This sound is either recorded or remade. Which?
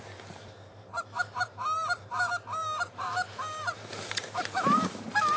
remade